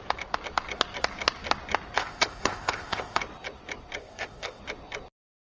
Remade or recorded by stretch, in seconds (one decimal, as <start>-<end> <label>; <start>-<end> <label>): 0.0-2.0 recorded; 2.0-3.2 remade; 3.2-4.0 recorded; 4.0-4.6 remade; 4.6-5.6 recorded